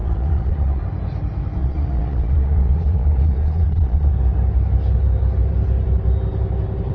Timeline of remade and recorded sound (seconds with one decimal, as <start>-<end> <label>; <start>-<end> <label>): 0.0-0.8 remade; 0.8-1.6 recorded; 1.6-4.1 remade; 4.1-6.9 recorded